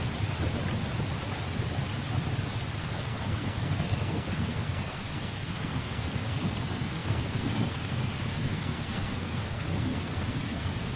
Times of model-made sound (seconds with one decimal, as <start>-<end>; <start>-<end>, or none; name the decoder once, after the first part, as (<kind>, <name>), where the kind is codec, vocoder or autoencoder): 2.8-11.0 (codec, SNAC)